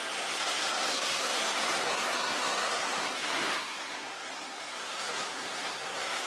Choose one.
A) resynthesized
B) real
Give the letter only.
A